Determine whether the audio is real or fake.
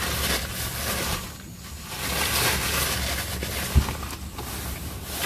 real